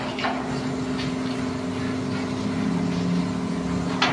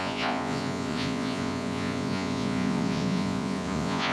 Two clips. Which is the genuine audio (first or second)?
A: first